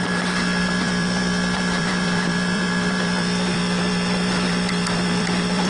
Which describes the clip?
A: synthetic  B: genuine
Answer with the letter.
A